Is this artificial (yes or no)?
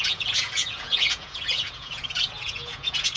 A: yes